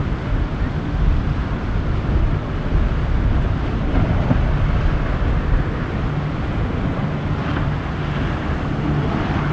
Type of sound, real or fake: real